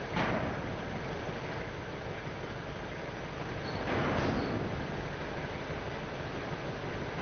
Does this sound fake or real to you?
real